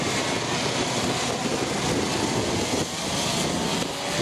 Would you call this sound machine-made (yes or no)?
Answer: no